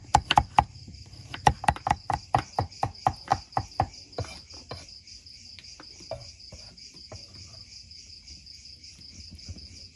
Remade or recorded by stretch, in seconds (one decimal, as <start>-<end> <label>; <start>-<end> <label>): 0.0-10.0 recorded